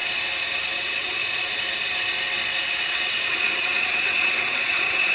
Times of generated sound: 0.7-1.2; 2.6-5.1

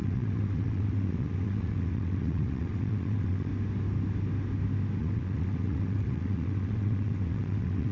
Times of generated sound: 0.0-3.5; 5.0-7.9